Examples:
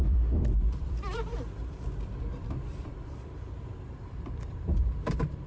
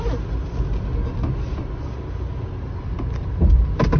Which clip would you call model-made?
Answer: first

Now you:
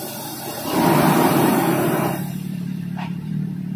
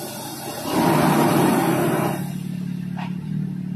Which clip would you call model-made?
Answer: first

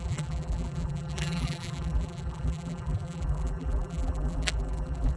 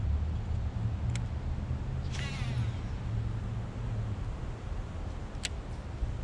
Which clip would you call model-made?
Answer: first